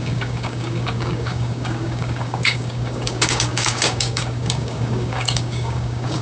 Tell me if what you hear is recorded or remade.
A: remade